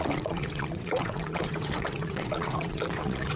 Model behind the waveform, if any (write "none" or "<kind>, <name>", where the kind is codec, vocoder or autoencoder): vocoder, WaveNeXt